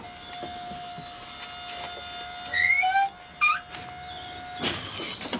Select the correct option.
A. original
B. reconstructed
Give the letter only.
A